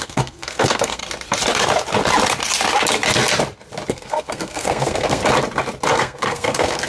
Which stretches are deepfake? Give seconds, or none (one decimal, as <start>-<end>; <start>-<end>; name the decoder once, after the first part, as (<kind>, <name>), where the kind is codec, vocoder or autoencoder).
0.0-1.0 (codec, SNAC); 3.9-5.2; 5.9-6.9

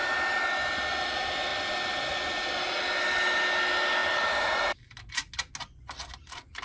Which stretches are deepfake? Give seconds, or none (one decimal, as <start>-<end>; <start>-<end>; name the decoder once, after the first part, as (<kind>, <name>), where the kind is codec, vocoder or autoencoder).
none

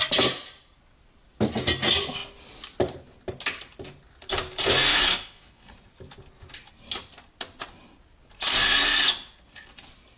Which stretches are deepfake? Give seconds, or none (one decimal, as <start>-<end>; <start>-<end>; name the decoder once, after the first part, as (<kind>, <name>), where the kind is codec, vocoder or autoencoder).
4.9-5.7 (autoencoder, DAC-VAE)

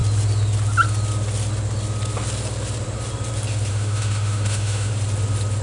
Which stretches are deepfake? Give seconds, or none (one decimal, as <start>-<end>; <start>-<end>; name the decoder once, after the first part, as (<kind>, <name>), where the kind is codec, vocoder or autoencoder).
3.7-4.9 (autoencoder, DAC-VAE)

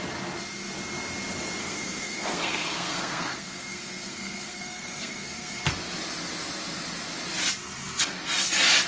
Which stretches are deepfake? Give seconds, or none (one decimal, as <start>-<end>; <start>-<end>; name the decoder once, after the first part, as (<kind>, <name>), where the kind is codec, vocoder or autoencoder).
1.6-5.6 (codec, SNAC)

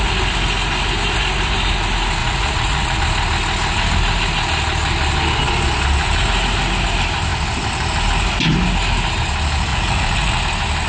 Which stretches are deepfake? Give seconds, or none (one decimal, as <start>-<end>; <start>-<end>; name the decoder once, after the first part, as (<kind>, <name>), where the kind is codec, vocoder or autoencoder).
2.2-3.0 (vocoder, Vocos); 9.7-10.4

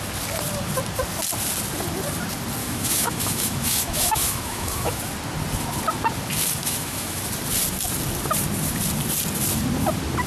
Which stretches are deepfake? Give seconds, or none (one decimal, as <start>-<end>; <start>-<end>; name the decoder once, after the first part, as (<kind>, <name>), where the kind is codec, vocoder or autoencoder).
2.6-5.0 (autoencoder, DAC-VAE); 6.6-7.2